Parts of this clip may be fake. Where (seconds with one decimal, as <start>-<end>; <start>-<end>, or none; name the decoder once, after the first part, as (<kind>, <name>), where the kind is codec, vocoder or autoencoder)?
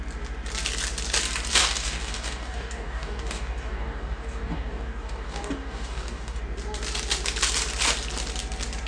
1.5-6.4 (codec, DAC)